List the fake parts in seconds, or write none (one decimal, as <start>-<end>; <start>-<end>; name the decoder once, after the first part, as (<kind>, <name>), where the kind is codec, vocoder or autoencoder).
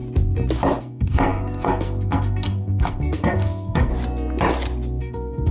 0.8-3.9 (codec, SNAC); 5.0-5.5